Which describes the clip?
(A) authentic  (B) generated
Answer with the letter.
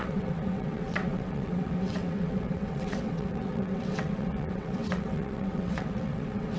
B